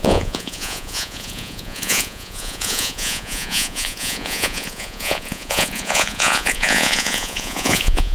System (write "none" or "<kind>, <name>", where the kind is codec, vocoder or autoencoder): vocoder, Vocos